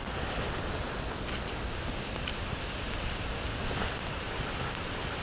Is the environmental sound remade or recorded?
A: recorded